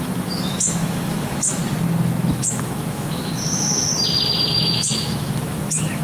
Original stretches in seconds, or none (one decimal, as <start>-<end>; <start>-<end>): 1.6-2.3; 3.9-4.5